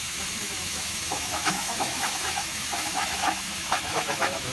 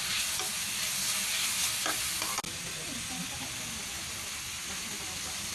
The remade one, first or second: first